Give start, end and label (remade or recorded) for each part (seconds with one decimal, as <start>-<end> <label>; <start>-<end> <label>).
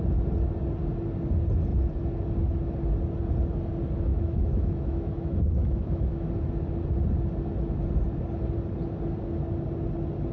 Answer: 0.0-4.1 recorded; 4.1-6.3 remade; 6.3-10.3 recorded